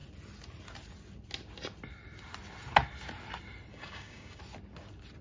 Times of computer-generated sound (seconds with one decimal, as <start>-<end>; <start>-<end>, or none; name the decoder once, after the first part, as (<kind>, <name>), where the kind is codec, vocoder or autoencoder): 3.7-4.4 (codec, DAC)